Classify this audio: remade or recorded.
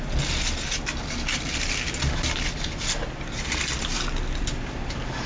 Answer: recorded